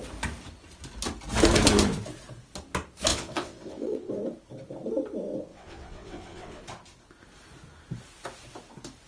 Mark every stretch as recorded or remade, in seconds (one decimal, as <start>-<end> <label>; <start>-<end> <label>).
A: 0.0-3.1 recorded; 3.1-4.1 remade; 4.1-5.5 recorded; 5.5-6.6 remade; 6.6-9.1 recorded